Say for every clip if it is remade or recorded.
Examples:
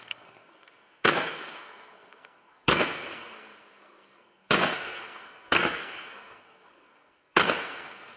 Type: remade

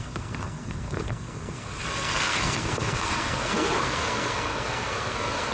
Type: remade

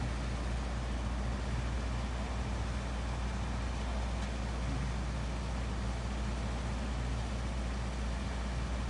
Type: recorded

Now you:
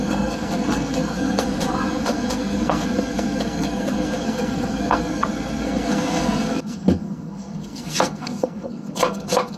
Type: remade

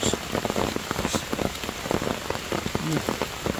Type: recorded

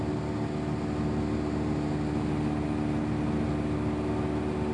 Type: recorded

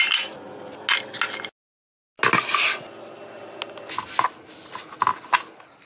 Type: recorded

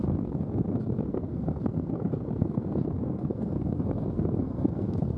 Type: remade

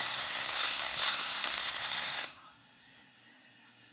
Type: remade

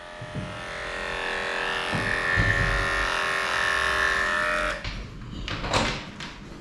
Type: recorded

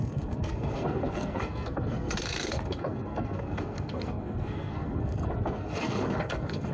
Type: remade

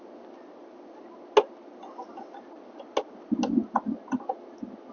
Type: recorded